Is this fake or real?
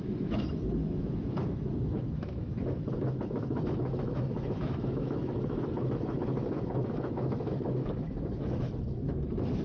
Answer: fake